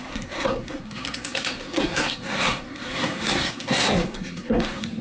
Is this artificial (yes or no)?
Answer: yes